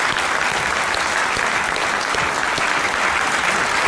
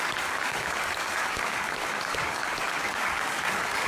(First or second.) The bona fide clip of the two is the first